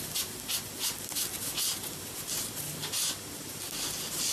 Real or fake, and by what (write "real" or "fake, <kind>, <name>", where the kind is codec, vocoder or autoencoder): real